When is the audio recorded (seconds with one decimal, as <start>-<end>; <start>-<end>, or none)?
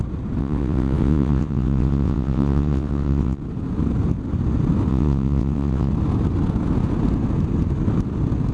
0.0-0.4; 3.4-4.9; 5.9-8.5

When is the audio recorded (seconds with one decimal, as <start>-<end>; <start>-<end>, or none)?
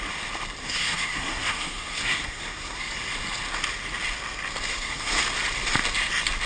0.0-0.6; 2.9-4.7; 5.2-6.5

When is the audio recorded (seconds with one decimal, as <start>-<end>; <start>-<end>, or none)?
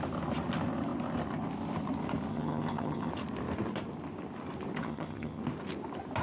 0.0-2.3; 3.1-4.8; 5.4-6.2